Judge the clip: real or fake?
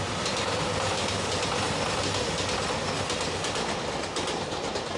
real